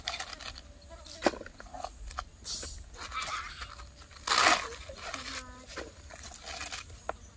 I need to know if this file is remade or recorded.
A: recorded